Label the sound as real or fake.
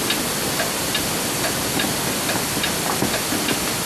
real